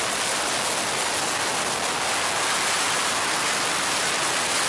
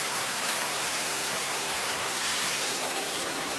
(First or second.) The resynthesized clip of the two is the second